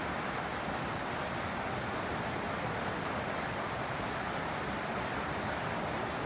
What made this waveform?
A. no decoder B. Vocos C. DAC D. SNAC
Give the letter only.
A